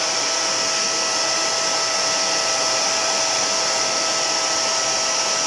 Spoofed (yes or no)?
no